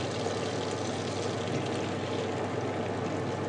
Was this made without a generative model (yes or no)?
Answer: yes